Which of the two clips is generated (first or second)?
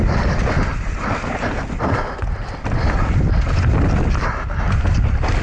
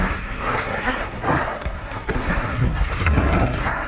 second